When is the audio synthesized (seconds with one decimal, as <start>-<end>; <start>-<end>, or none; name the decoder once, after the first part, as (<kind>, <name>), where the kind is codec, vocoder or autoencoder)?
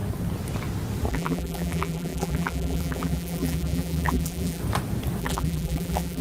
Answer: 1.1-4.6 (vocoder, BigVGAN v2); 5.2-6.2